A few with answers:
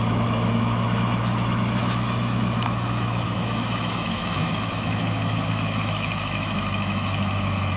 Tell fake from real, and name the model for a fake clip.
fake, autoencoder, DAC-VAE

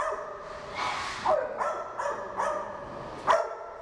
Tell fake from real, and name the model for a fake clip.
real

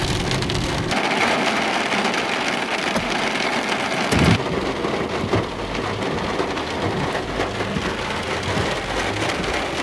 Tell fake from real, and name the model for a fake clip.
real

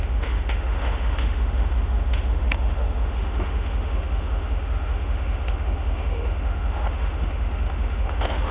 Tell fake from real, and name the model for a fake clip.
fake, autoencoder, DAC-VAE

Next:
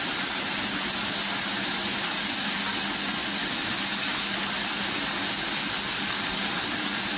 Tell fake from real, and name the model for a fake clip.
real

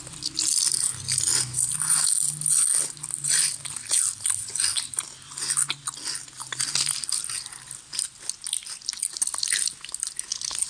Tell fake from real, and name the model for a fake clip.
real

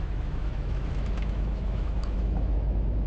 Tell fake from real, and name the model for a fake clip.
fake, autoencoder, DAC-VAE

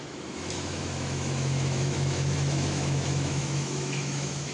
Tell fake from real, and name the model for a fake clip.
fake, autoencoder, DAC-VAE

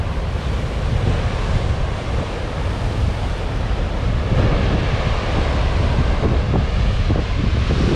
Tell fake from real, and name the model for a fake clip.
real